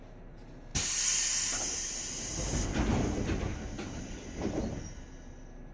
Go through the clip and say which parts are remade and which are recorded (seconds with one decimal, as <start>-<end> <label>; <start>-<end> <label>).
0.0-5.7 recorded